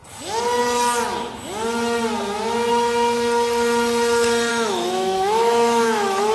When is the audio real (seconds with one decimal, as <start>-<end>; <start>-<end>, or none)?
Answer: 0.0-4.5